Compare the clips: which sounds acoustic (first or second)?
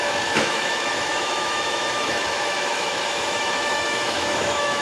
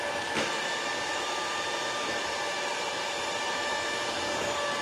second